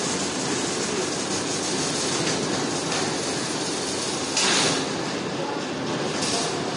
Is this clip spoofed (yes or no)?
no